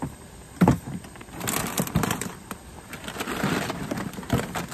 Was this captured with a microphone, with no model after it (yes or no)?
yes